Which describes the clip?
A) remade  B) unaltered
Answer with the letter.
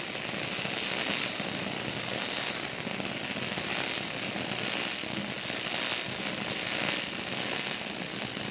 B